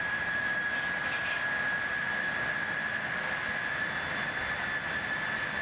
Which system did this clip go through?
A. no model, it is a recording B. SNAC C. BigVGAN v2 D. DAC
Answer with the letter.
A